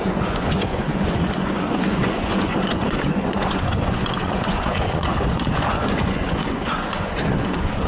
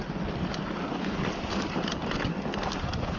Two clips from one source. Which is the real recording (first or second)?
second